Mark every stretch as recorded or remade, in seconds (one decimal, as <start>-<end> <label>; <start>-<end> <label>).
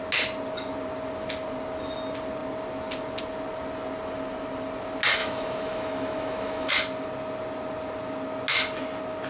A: 0.0-5.2 recorded; 5.2-6.7 remade; 6.7-9.3 recorded